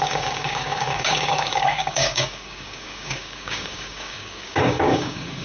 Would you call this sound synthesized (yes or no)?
yes